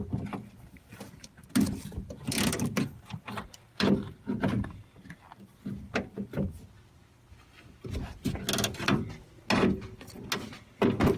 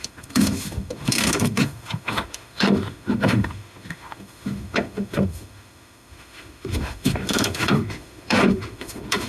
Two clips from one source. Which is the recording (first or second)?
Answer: first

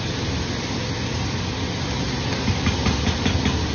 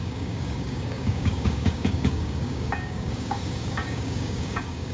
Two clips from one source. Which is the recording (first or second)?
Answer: first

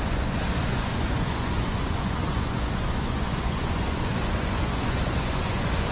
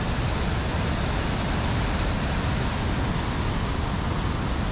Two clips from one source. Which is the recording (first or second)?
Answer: second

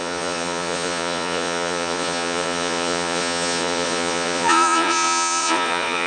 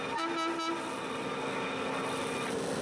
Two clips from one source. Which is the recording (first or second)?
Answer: second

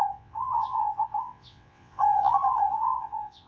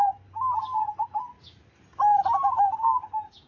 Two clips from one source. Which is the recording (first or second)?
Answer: second